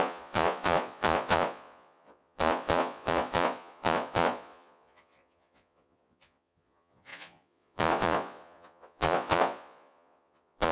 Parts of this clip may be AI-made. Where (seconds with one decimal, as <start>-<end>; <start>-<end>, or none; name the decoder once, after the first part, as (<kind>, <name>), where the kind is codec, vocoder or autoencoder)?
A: 0.0-10.7 (vocoder, Vocos)